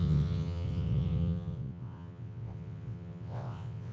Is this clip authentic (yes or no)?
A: no